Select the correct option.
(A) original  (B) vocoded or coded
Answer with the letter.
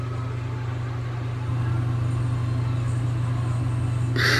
A